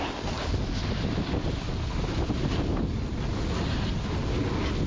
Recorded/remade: recorded